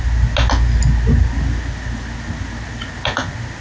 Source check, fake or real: real